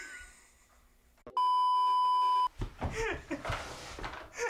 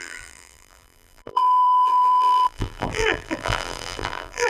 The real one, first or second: first